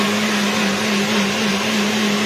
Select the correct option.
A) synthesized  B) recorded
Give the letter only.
B